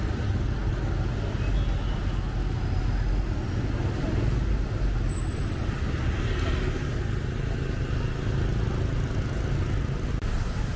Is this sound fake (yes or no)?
no